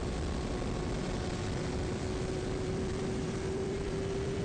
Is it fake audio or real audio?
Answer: fake